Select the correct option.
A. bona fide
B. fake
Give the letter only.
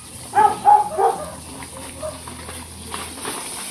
A